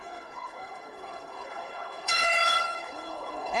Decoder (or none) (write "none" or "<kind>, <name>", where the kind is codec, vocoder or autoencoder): codec, HILCodec